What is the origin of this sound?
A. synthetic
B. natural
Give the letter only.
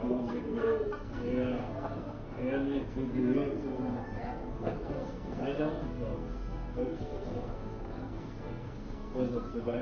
A